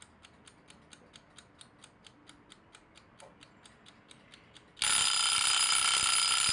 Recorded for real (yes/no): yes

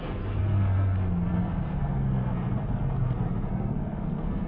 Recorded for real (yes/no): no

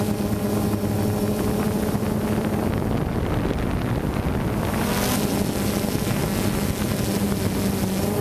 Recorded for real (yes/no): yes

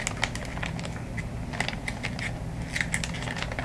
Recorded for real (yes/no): yes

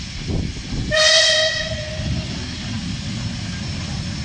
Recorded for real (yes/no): yes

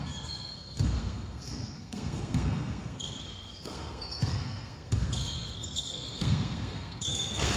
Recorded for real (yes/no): no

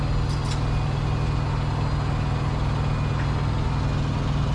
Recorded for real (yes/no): yes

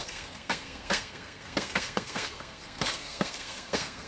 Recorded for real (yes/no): no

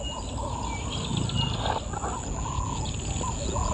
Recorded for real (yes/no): yes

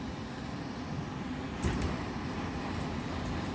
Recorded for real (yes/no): yes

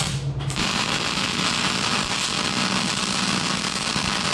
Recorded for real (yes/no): yes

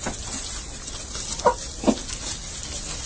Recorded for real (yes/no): yes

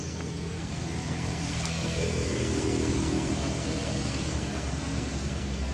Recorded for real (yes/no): no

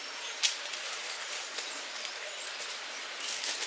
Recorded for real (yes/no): yes